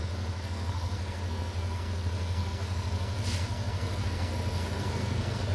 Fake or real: fake